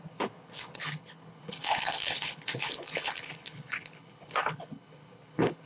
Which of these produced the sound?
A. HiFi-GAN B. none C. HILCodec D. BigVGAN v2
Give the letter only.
C